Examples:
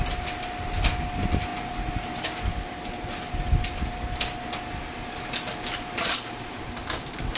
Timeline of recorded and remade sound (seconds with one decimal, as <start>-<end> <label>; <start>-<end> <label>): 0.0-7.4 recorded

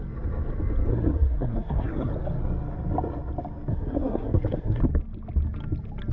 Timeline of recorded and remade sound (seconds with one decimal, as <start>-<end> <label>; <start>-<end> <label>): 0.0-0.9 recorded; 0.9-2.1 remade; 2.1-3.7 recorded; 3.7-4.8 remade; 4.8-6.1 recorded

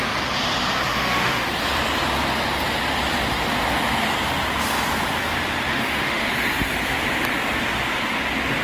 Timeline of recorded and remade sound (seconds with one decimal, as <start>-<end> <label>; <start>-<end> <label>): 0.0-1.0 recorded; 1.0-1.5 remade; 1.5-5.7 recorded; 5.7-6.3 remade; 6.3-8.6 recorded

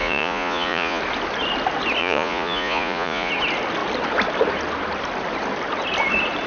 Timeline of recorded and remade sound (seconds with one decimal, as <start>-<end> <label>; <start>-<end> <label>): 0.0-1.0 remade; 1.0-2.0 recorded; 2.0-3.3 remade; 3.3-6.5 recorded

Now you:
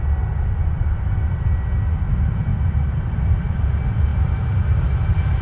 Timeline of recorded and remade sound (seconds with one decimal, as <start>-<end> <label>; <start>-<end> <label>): 0.0-5.4 recorded

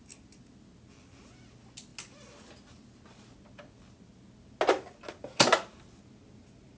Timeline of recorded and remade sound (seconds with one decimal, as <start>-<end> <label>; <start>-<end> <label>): 0.0-6.8 recorded

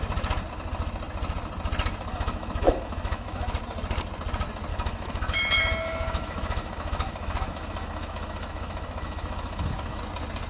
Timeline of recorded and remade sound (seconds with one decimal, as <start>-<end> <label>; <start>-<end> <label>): 0.0-2.1 recorded; 2.1-3.5 remade; 3.5-4.7 recorded; 4.7-10.0 remade; 10.0-10.5 recorded